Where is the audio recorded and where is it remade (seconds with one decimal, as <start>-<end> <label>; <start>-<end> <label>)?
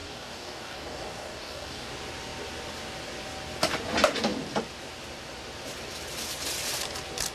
0.0-1.9 remade; 1.9-7.3 recorded